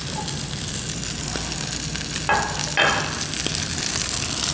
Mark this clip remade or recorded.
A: recorded